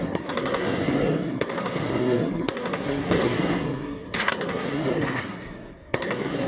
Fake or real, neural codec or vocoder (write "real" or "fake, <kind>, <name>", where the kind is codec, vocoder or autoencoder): fake, codec, SNAC